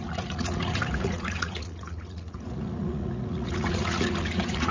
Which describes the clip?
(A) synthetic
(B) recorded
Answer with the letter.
A